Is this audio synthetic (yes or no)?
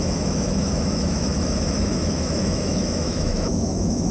yes